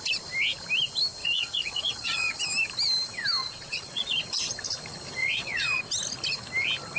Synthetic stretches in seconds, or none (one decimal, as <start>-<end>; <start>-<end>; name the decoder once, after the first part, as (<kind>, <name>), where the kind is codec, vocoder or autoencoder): 1.2-2.4 (vocoder, Vocos); 3.4-4.3; 5.2-5.8